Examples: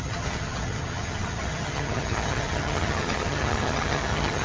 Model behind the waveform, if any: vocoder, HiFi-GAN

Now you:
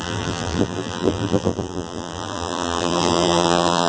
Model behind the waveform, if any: vocoder, BigVGAN v2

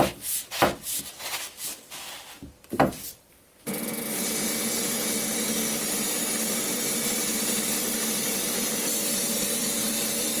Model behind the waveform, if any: none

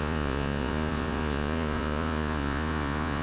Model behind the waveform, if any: vocoder, Vocos